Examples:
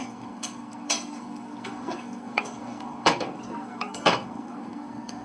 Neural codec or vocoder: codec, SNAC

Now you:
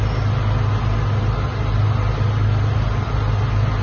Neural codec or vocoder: none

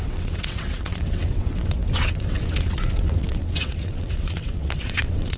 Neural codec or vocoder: vocoder, WaveNeXt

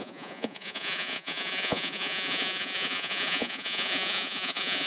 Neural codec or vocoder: vocoder, Vocos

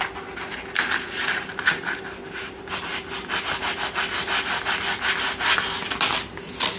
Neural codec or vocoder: none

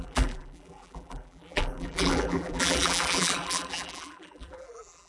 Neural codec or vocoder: vocoder, BigVGAN v2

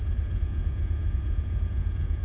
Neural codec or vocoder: vocoder, Vocos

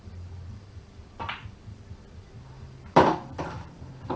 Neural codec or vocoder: vocoder, BigVGAN v2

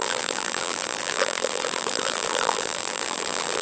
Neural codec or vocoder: vocoder, BigVGAN v2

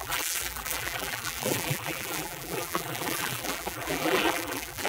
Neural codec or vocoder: vocoder, BigVGAN v2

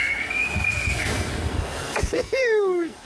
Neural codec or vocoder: codec, SNAC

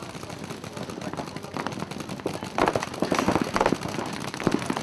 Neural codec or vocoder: none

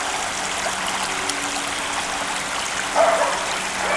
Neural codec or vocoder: none